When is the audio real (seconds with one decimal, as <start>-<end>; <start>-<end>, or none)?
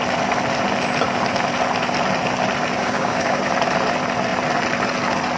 0.0-2.8; 3.4-5.4